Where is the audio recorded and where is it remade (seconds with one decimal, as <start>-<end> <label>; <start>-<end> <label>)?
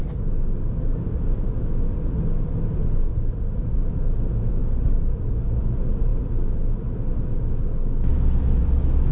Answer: 0.0-9.1 recorded